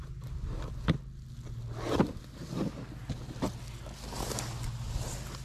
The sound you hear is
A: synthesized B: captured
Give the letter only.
B